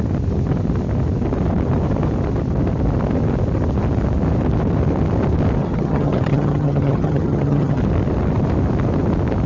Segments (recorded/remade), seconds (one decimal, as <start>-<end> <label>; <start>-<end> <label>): 0.0-5.6 recorded; 5.6-7.8 remade; 7.8-9.5 recorded